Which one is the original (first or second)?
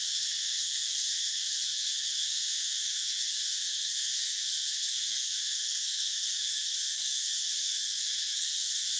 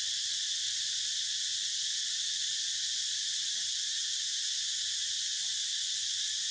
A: second